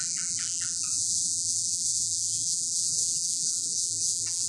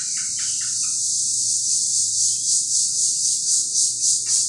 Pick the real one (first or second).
second